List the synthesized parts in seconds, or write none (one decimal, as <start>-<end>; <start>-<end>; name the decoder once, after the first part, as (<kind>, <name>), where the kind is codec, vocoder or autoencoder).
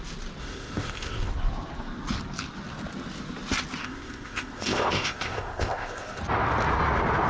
0.4-1.3 (codec, ZipCodec); 3.8-6.2